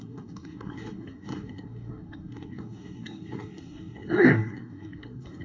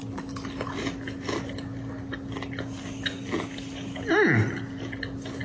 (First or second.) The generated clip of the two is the first